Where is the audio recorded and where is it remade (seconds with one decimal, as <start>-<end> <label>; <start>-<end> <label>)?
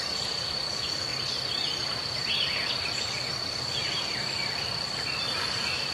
0.0-1.1 remade; 1.1-3.8 recorded; 3.8-5.9 remade